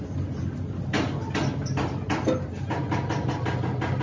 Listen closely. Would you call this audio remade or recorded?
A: recorded